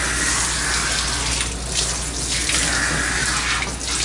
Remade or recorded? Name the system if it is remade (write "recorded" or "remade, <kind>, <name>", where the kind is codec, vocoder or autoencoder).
recorded